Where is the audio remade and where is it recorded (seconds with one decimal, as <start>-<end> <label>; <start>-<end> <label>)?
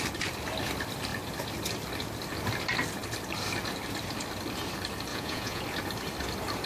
0.0-5.1 recorded; 5.1-5.6 remade; 5.6-6.7 recorded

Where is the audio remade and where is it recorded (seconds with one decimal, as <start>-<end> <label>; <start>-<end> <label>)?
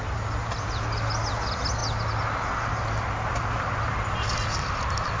0.0-5.2 recorded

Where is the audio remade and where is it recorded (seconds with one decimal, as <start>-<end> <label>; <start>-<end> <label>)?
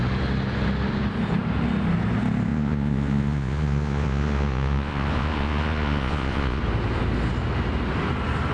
0.0-2.5 recorded; 2.5-6.6 remade; 6.6-8.5 recorded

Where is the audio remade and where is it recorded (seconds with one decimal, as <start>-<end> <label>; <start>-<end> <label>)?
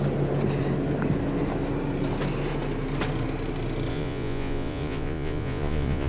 0.0-3.9 recorded; 3.9-6.1 remade